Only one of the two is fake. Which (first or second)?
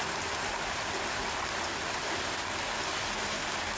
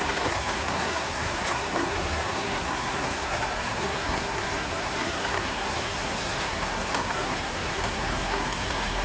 second